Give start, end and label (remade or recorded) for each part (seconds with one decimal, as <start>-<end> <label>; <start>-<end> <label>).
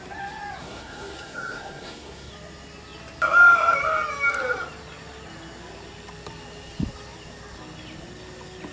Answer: 0.0-0.6 recorded; 0.6-2.3 remade; 2.3-8.7 recorded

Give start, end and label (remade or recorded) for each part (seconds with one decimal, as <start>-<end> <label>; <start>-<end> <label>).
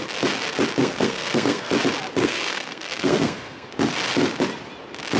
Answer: 0.0-0.8 recorded; 0.8-1.7 remade; 1.7-2.2 recorded; 2.2-3.7 remade; 3.7-5.2 recorded